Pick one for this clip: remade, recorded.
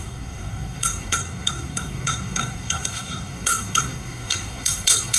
remade